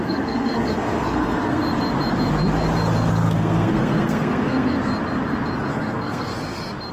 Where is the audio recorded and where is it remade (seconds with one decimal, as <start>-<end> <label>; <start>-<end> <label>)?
0.0-1.6 remade; 1.6-3.1 recorded; 3.1-4.8 remade; 4.8-5.7 recorded; 5.7-6.3 remade; 6.3-6.9 recorded